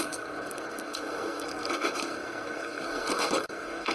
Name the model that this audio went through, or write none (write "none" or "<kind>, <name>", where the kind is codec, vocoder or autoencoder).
codec, SNAC